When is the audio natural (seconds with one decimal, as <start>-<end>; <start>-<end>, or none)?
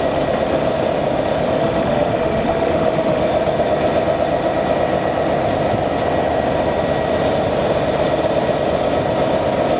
0.0-1.6; 3.2-9.8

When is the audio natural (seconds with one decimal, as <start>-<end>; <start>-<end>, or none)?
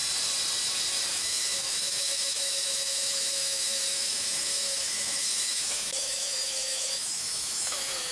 0.0-1.1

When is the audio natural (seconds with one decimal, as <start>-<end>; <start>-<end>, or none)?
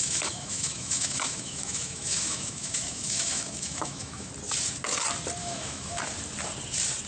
4.3-5.4; 6.0-7.1